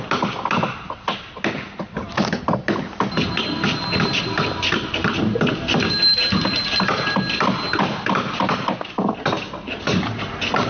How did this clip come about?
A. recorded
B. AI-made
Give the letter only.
A